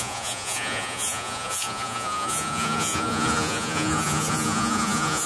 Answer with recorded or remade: remade